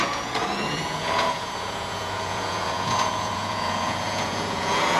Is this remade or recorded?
remade